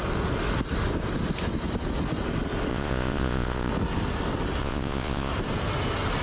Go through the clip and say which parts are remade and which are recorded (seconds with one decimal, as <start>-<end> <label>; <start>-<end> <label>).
0.0-2.7 recorded; 2.7-3.7 remade; 3.7-4.6 recorded; 4.6-5.3 remade; 5.3-6.2 recorded